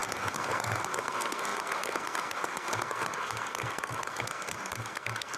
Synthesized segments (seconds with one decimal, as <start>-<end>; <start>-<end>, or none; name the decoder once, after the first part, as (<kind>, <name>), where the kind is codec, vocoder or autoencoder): 0.0-5.4 (codec, SNAC)